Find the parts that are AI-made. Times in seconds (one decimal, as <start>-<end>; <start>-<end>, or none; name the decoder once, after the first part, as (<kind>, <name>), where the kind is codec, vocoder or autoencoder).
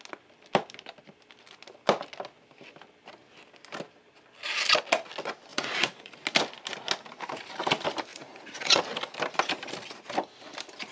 5.5-6.1 (vocoder, Vocos); 8.1-8.8